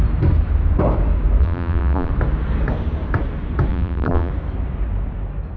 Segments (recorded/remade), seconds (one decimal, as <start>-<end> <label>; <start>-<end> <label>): 0.0-1.4 recorded; 1.4-2.1 remade; 2.1-3.7 recorded; 3.7-4.3 remade; 4.3-5.6 recorded